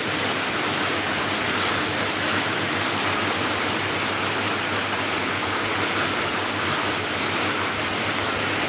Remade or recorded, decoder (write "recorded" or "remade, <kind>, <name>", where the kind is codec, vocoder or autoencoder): recorded